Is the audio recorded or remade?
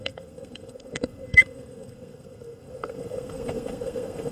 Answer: remade